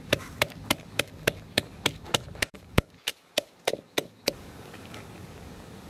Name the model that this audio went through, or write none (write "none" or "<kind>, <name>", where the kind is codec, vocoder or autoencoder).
codec, DAC